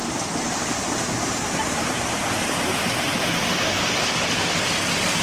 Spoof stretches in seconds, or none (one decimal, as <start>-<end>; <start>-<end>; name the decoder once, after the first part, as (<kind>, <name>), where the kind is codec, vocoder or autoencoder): 0.0-3.1 (vocoder, BigVGAN v2)